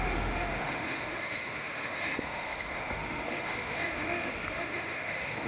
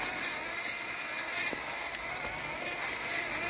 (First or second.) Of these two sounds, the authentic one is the second